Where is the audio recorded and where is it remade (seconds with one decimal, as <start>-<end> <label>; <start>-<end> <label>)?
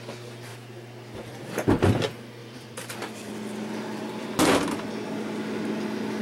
0.0-2.4 recorded; 2.4-4.3 remade; 4.3-6.2 recorded